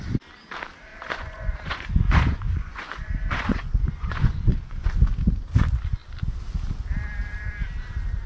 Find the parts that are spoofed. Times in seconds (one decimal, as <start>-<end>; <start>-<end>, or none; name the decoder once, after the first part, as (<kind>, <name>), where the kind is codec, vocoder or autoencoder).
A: 0.9-4.9 (vocoder, Vocos)